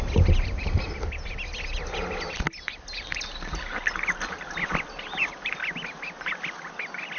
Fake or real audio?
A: real